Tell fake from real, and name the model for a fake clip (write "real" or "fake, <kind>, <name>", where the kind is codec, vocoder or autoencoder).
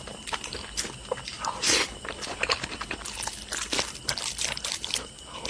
fake, vocoder, BigVGAN v2